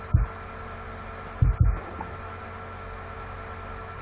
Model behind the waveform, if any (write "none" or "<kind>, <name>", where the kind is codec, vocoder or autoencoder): none